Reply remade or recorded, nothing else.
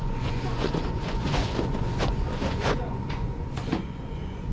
remade